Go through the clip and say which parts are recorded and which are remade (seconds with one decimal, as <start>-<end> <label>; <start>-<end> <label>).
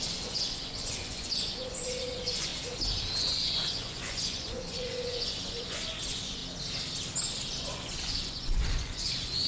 0.0-2.5 remade; 2.5-3.2 recorded; 3.2-6.4 remade; 6.4-7.5 recorded; 7.5-9.5 remade